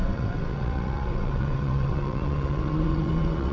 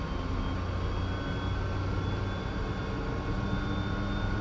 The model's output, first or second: first